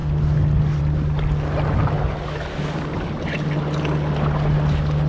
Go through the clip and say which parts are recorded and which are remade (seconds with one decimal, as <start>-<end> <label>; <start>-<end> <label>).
0.0-5.1 recorded